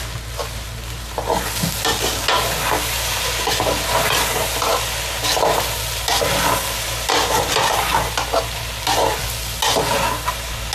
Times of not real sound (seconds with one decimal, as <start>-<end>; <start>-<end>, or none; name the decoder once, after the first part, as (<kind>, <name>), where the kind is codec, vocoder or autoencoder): none